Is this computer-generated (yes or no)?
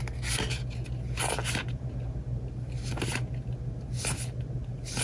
no